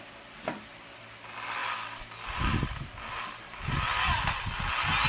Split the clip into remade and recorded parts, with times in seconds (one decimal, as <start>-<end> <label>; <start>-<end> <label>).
0.0-5.1 recorded